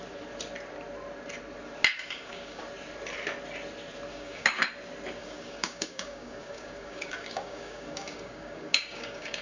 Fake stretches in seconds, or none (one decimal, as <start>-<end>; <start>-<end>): 1.9-2.6; 4.1-4.7; 5.2-9.4